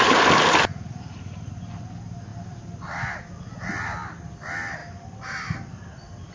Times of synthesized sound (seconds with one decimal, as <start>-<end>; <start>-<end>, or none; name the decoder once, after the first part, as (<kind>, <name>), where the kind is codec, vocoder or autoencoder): 0.7-1.5 (vocoder, Vocos)